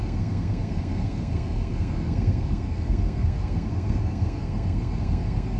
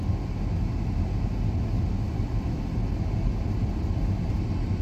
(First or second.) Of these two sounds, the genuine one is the second